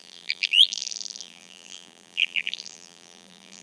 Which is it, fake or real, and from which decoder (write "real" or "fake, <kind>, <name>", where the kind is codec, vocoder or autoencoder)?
fake, vocoder, BigVGAN v2